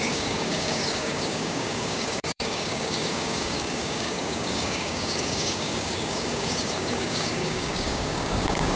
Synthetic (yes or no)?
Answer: yes